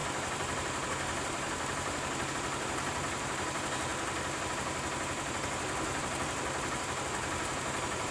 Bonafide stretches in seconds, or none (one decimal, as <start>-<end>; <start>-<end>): 3.9-4.5